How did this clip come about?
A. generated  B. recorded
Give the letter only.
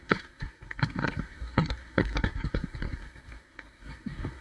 A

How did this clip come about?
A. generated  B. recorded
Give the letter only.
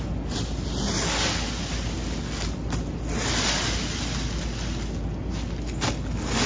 B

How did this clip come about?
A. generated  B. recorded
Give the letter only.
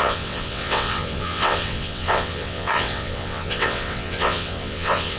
A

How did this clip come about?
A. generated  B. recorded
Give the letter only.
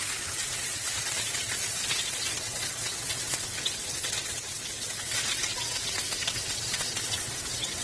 A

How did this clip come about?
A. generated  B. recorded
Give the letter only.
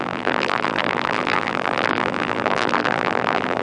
A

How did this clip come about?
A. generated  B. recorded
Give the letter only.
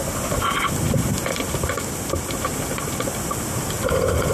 B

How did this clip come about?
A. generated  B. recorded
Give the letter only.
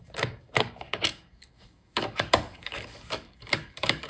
A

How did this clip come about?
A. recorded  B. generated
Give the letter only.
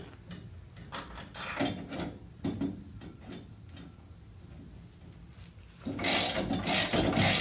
A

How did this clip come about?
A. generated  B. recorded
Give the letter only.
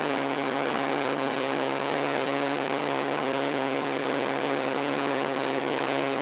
A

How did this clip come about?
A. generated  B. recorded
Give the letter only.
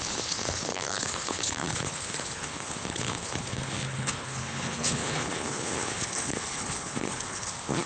A